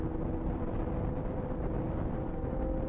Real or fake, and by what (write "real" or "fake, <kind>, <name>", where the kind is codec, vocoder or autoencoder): real